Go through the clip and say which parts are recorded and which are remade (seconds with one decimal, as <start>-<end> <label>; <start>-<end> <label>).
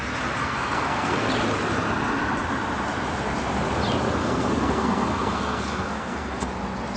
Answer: 0.0-0.4 recorded; 0.4-1.3 remade; 1.3-4.2 recorded; 4.2-6.5 remade; 6.5-7.0 recorded